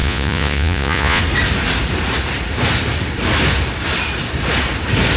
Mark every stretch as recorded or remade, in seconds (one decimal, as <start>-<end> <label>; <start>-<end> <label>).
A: 0.0-1.2 remade; 1.2-5.2 recorded